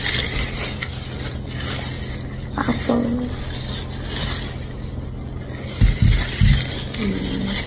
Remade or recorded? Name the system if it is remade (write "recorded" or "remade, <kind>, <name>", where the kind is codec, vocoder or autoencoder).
recorded